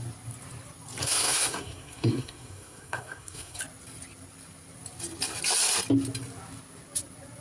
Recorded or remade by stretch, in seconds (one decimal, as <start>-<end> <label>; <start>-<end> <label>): 0.0-1.0 recorded; 1.0-3.6 remade; 3.6-7.4 recorded